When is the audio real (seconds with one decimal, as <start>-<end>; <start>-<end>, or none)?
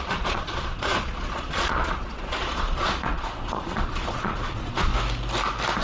4.9-5.8